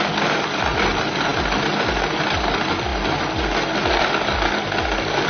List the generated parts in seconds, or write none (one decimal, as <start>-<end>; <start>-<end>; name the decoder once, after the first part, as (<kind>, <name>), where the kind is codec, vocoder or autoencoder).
none